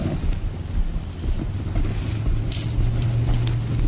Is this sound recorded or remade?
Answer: recorded